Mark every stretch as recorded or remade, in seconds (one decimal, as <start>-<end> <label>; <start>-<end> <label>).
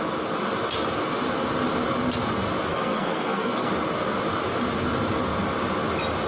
0.0-2.7 recorded; 2.7-3.7 remade; 3.7-6.3 recorded